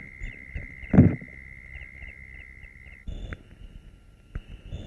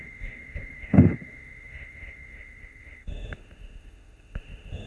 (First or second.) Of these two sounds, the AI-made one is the second